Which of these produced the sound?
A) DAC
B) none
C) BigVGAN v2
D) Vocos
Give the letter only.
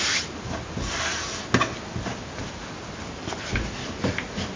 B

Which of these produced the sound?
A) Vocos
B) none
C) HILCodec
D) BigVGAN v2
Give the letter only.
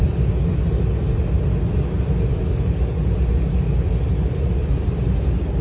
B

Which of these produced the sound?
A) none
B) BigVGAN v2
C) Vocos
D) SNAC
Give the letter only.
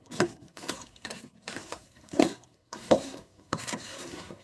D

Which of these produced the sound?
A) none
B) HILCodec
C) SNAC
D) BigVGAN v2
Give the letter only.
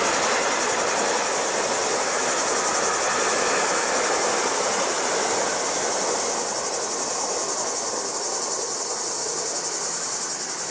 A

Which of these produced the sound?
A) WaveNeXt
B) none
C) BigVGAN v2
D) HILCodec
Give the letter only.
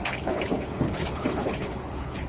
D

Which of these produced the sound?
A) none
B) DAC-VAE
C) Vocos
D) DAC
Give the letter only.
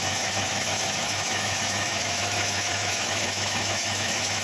B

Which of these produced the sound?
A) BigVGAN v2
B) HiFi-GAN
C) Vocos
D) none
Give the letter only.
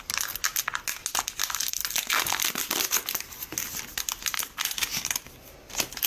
D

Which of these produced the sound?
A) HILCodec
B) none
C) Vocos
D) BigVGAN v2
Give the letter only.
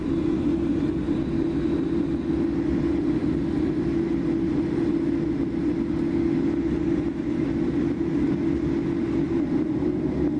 B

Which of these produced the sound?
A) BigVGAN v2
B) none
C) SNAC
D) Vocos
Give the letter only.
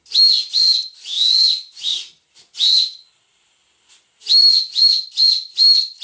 B